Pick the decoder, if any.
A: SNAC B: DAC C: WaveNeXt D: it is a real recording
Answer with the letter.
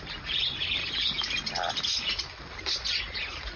D